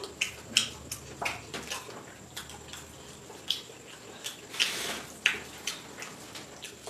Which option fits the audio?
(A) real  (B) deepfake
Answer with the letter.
A